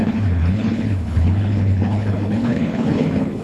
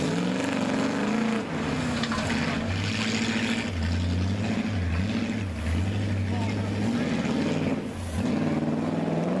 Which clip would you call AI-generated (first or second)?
first